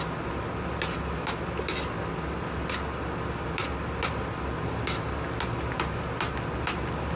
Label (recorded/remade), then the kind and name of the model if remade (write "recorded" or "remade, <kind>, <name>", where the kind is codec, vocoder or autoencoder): recorded